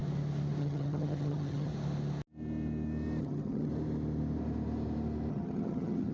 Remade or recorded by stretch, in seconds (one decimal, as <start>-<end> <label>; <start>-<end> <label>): 0.0-0.6 recorded; 0.6-1.7 remade; 1.7-3.2 recorded; 3.2-3.7 remade; 3.7-5.3 recorded; 5.3-6.1 remade